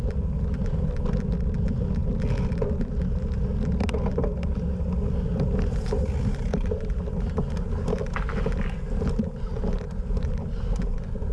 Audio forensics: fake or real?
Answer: real